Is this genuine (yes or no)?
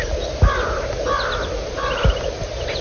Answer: yes